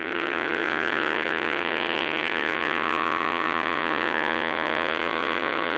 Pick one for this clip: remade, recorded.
remade